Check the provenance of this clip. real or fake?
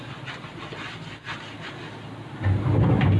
real